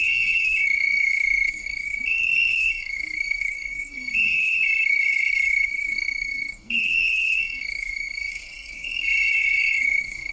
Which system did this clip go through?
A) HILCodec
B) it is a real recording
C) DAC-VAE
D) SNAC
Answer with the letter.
D